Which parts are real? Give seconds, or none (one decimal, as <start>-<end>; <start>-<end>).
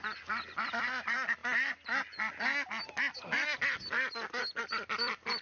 0.0-5.4